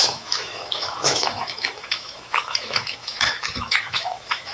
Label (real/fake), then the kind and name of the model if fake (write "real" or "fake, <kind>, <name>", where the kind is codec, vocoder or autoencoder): fake, autoencoder, DAC-VAE